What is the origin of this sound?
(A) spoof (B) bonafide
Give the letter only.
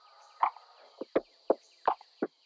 B